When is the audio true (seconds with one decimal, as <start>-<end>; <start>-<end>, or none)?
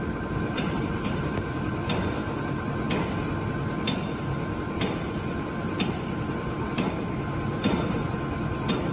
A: 2.2-4.7